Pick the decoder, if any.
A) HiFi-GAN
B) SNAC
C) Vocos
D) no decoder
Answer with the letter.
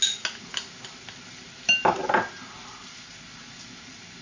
D